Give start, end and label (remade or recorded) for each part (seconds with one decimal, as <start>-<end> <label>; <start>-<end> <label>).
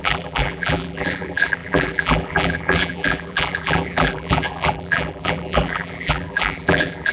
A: 0.0-7.1 remade